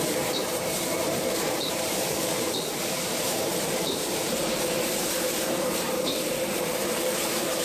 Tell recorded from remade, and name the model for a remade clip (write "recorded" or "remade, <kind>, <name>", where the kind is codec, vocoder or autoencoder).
remade, vocoder, BigVGAN v2